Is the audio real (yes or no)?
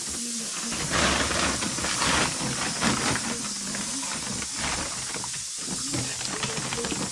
yes